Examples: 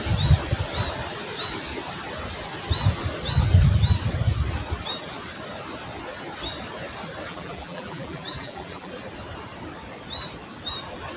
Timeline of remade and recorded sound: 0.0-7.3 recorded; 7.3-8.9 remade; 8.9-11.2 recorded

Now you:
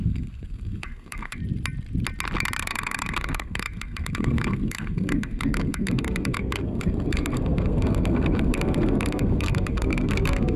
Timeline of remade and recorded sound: 0.0-1.4 remade; 1.4-2.6 recorded; 2.6-10.6 remade

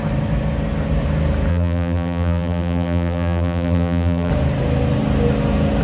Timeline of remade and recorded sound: 0.0-1.5 recorded; 1.5-4.3 remade; 4.3-5.8 recorded

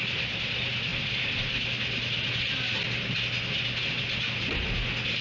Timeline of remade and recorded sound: 0.0-0.9 recorded; 0.9-1.7 remade; 1.7-5.2 recorded

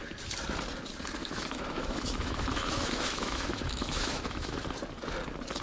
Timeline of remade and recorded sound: 0.0-1.2 recorded; 1.2-4.6 remade; 4.6-5.6 recorded

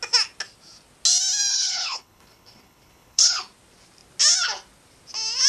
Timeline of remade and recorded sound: 0.0-1.5 recorded; 1.5-3.4 remade; 3.4-5.5 recorded

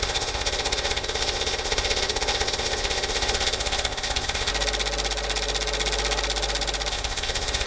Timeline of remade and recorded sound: 0.0-4.5 remade; 4.5-6.9 recorded; 6.9-7.7 remade